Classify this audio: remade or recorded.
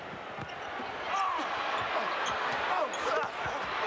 recorded